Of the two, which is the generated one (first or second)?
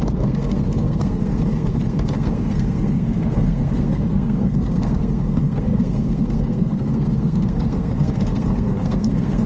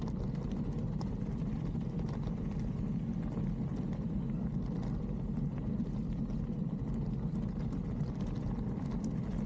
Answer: first